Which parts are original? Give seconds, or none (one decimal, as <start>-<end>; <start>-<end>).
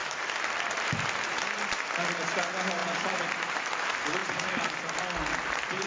2.4-4.2; 5.0-5.9